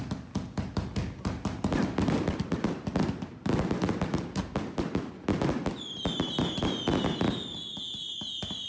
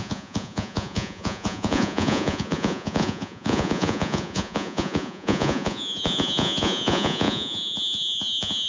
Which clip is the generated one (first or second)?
second